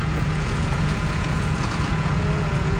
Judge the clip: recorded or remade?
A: remade